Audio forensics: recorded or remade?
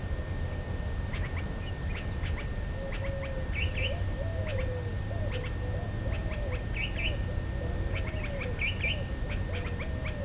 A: recorded